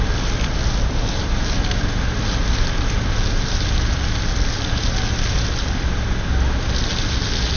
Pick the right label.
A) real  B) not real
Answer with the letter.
A